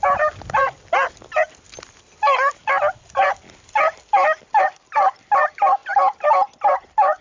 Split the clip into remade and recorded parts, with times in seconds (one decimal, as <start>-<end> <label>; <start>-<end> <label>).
0.0-7.2 recorded

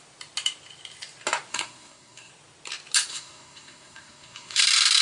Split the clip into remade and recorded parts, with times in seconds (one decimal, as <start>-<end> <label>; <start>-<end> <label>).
0.0-1.5 recorded; 1.5-2.3 remade; 2.3-3.1 recorded; 3.1-4.6 remade; 4.6-5.0 recorded

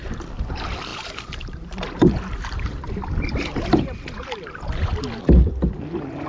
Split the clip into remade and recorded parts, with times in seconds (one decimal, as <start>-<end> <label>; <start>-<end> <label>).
0.0-4.9 remade; 4.9-5.7 recorded; 5.7-6.3 remade